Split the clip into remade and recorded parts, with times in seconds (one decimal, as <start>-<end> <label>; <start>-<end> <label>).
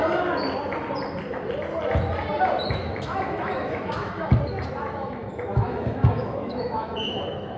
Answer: 0.0-2.7 recorded; 2.7-4.3 remade; 4.3-4.8 recorded; 4.8-7.6 remade